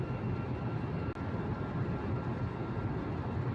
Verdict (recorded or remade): recorded